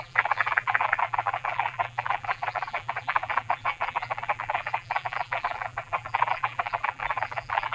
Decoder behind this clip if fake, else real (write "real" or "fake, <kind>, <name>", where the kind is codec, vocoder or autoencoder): fake, vocoder, BigVGAN v2